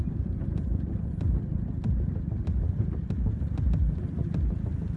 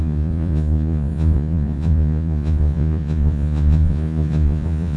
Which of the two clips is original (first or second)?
first